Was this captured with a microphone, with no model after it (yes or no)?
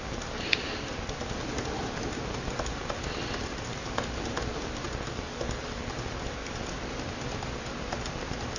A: yes